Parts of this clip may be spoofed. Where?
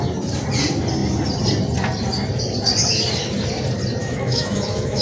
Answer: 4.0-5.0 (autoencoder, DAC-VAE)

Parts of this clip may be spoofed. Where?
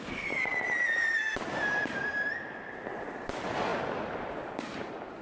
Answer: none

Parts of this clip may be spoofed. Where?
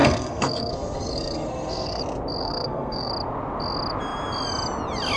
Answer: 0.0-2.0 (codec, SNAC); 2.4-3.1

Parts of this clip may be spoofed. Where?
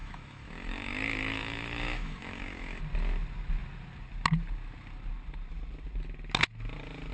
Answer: 0.0-2.8 (autoencoder, DAC-VAE)